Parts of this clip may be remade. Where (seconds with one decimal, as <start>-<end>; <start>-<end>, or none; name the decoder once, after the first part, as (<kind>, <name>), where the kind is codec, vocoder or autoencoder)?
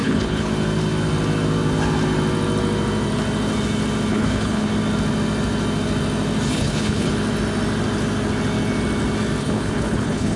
0.0-0.5 (codec, HILCodec); 4.1-4.7; 6.5-7.1; 9.4-10.4